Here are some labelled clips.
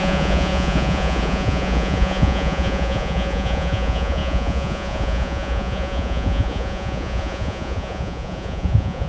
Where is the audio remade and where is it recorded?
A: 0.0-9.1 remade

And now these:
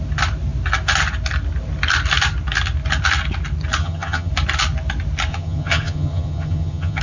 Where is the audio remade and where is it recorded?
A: 0.0-3.8 recorded; 3.8-4.3 remade; 4.3-5.3 recorded; 5.3-7.0 remade

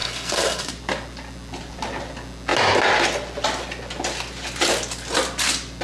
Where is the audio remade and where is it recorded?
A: 0.0-0.7 remade; 0.7-5.8 recorded

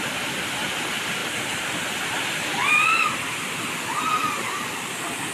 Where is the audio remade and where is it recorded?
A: 0.0-5.3 recorded